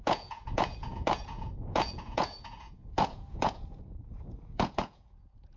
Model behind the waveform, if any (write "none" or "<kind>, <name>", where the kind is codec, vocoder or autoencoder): vocoder, Vocos